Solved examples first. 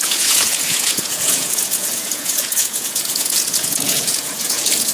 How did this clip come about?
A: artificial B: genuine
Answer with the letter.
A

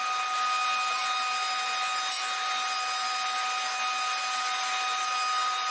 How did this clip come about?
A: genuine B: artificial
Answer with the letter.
A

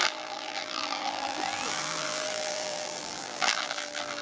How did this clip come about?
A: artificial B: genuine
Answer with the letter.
A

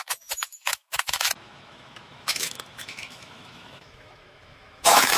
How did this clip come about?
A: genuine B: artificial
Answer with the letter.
B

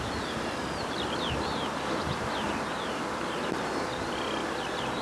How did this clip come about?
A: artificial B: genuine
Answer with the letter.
B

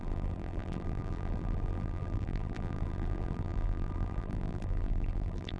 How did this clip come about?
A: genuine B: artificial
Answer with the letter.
B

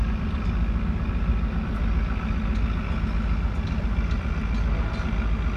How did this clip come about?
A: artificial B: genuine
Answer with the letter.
B